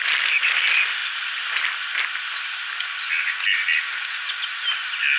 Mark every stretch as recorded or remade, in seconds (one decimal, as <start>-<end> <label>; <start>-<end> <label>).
0.0-5.2 recorded